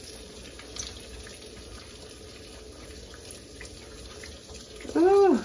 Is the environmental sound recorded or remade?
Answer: recorded